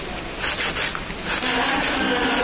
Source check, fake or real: real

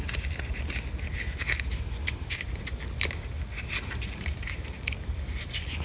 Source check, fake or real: real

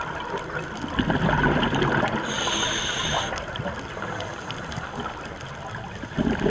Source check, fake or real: real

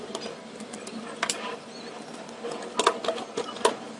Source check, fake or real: real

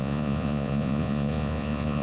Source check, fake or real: fake